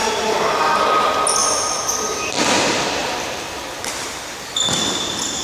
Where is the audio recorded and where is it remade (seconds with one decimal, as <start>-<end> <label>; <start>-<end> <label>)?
0.0-0.6 remade; 0.6-3.0 recorded; 3.0-4.7 remade; 4.7-5.4 recorded